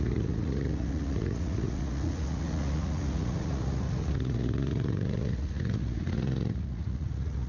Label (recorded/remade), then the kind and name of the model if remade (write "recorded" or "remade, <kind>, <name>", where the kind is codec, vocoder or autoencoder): remade, vocoder, Vocos